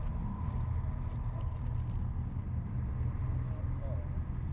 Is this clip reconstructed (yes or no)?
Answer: no